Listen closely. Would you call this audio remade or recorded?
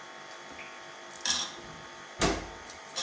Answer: recorded